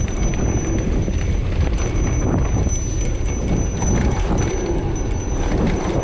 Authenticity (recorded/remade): recorded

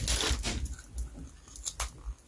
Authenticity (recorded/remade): recorded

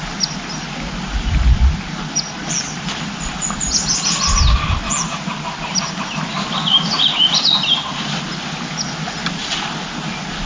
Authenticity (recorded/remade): recorded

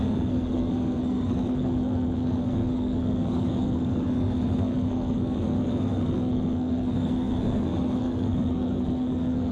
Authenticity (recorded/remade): remade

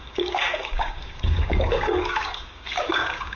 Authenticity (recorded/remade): remade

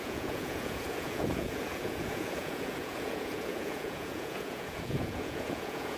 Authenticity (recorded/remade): remade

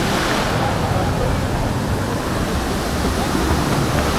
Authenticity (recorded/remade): recorded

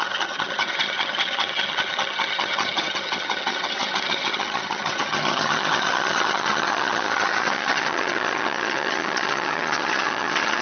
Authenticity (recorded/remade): remade